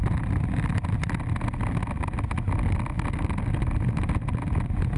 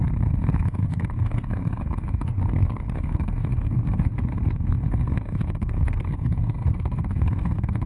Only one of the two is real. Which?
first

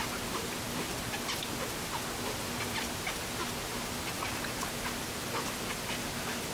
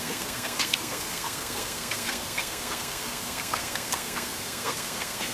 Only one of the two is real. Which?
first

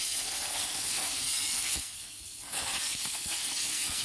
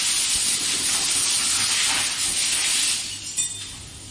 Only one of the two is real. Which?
second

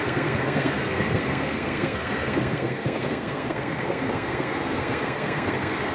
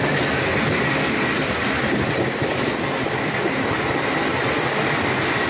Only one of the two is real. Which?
second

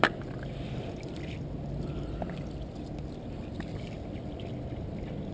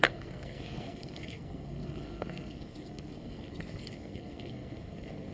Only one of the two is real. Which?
first